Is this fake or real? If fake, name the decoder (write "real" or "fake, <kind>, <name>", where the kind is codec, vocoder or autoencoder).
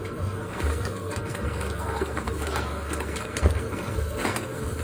fake, codec, SNAC